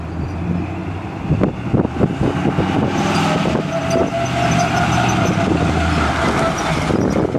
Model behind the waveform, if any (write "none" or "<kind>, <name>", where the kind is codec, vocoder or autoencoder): none